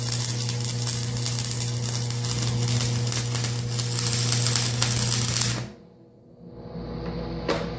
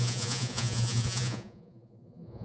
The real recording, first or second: first